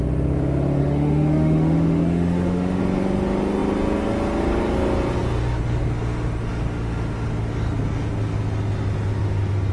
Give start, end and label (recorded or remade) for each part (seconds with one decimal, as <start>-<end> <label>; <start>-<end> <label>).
0.0-0.8 recorded; 0.8-2.8 remade; 2.8-9.7 recorded

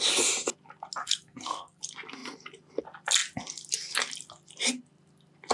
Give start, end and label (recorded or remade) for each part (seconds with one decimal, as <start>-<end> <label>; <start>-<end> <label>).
0.0-1.0 recorded; 1.0-1.8 remade; 1.8-5.5 recorded

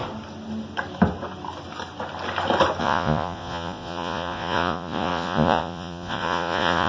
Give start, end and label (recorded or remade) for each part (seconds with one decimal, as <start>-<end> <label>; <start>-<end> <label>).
0.0-2.8 recorded; 2.8-6.9 remade